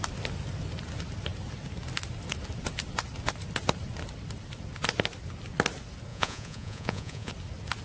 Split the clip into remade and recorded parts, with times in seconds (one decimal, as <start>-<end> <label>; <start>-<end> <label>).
0.0-6.1 recorded; 6.1-7.3 remade; 7.3-7.8 recorded